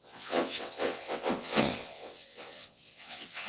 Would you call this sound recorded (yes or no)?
no